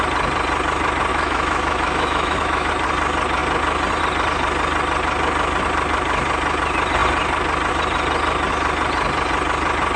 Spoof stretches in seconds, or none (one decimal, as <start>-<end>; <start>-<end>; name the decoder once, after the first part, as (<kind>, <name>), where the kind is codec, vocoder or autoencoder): 1.1-2.7 (autoencoder, DAC-VAE)